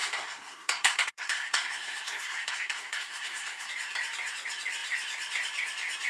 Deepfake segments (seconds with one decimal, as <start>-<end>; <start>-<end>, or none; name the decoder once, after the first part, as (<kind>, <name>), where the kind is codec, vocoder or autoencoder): 0.0-3.7 (codec, SNAC)